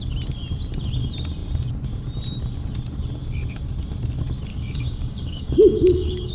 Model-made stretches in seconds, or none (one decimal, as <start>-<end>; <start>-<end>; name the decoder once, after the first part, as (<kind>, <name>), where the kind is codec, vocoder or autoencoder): 4.5-6.3 (codec, DAC)